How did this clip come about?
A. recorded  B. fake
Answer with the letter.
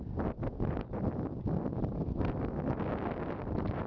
A